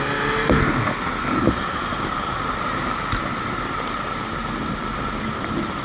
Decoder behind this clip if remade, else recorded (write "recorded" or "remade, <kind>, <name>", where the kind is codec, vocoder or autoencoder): recorded